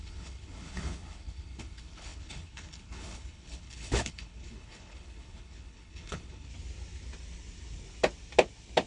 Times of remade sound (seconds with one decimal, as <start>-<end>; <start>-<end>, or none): 0.0-6.5